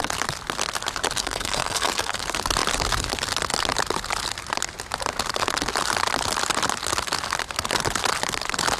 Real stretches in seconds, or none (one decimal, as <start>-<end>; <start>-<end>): 0.0-1.2; 2.2-8.8